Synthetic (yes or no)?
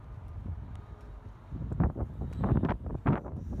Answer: no